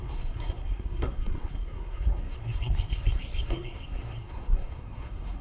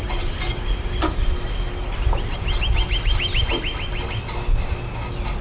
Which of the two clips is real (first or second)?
second